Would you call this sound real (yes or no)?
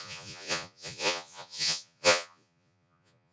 no